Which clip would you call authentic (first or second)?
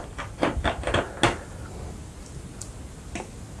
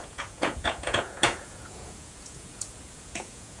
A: first